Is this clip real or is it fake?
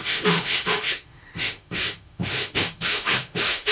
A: fake